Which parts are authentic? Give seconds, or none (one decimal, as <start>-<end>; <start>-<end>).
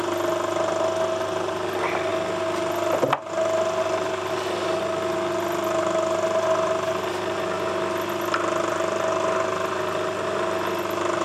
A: 0.0-11.2